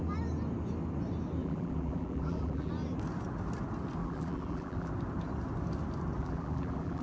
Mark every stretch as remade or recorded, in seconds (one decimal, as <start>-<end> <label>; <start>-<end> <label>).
0.0-1.4 recorded; 1.4-2.7 remade; 2.7-4.0 recorded; 4.0-4.9 remade; 4.9-6.2 recorded; 6.2-7.0 remade